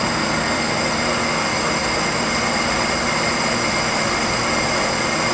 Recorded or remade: recorded